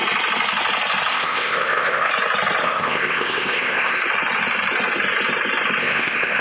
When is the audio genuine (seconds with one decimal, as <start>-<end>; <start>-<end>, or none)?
0.0-1.1; 2.1-2.6; 4.0-5.8